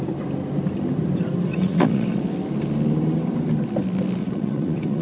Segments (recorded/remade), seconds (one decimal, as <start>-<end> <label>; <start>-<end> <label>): 0.0-1.5 recorded; 1.5-2.2 remade; 2.2-4.2 recorded; 4.2-5.0 remade